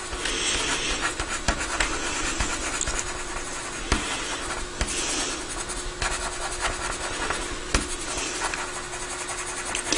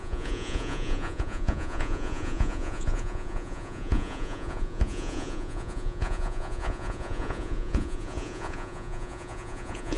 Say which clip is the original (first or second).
first